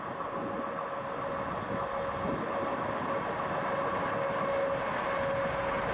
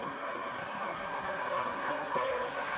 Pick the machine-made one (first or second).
second